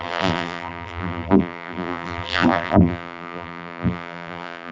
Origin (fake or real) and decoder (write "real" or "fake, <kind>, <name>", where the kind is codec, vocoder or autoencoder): fake, vocoder, BigVGAN v2